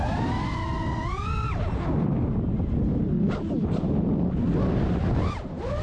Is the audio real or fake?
real